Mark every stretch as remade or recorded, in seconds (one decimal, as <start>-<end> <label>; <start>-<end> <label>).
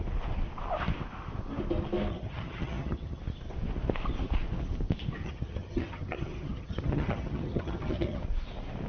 0.0-2.1 recorded; 2.1-3.2 remade; 3.2-5.2 recorded; 5.2-8.2 remade; 8.2-8.9 recorded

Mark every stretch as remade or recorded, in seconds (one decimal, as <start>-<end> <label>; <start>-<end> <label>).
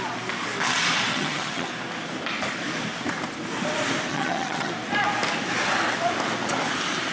0.0-1.1 recorded; 1.1-1.7 remade; 1.7-4.1 recorded; 4.1-4.7 remade; 4.7-7.1 recorded